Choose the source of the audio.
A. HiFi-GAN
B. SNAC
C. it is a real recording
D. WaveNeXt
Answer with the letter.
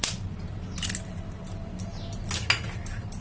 C